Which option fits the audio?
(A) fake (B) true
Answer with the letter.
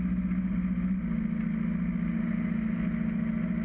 B